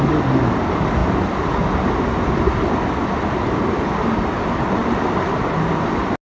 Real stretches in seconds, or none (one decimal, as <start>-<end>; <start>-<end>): 0.0-6.4